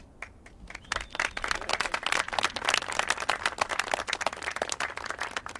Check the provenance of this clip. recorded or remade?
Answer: recorded